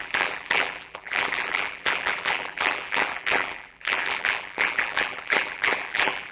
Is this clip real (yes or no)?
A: no